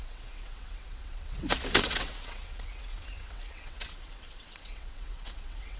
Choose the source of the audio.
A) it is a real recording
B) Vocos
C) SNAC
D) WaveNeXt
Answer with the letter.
D